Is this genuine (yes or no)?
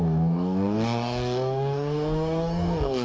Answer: no